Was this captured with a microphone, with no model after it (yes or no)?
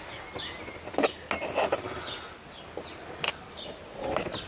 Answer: yes